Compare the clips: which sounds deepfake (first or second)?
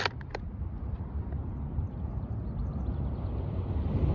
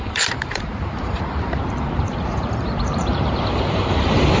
second